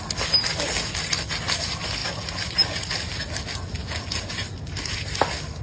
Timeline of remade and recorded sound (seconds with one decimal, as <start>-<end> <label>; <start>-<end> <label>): 0.0-5.6 recorded